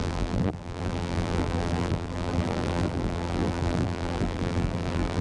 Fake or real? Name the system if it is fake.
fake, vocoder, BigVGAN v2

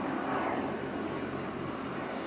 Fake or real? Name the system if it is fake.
real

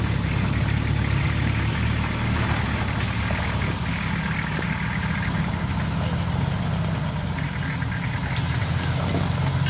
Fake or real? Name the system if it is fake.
real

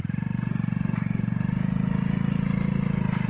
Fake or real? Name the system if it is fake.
real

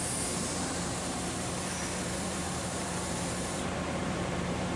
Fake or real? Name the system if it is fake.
fake, vocoder, BigVGAN v2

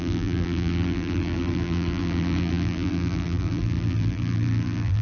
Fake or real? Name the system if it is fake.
fake, vocoder, BigVGAN v2